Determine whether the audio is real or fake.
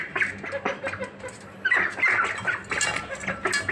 real